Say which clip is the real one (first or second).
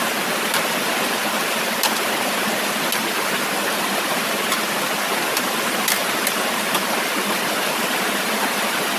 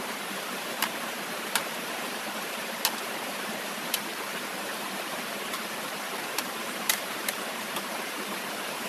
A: first